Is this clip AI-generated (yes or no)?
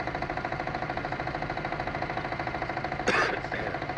no